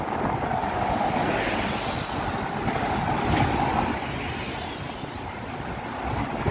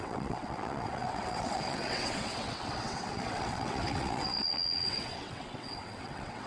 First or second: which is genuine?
first